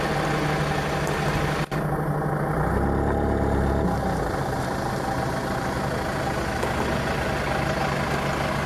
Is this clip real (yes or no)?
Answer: yes